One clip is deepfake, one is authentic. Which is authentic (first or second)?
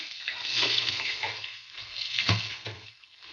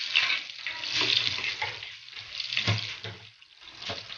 second